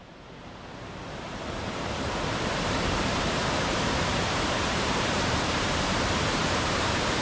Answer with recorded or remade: remade